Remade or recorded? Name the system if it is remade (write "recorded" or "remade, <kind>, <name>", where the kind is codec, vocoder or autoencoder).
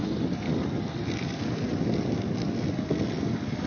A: recorded